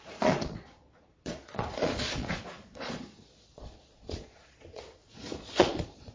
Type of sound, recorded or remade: remade